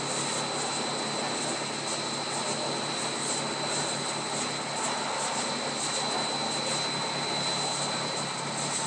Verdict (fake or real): real